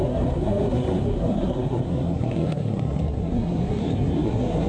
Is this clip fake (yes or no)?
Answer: yes